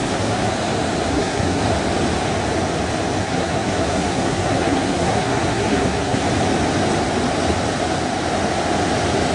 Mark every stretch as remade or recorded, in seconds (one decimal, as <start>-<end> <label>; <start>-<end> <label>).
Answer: 0.0-0.5 remade; 0.5-1.1 recorded; 1.1-1.6 remade; 1.6-3.2 recorded; 3.2-6.2 remade; 6.2-9.3 recorded